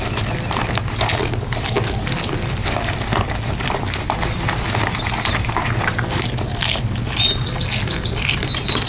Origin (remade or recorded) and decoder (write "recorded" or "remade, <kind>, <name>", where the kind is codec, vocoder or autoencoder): recorded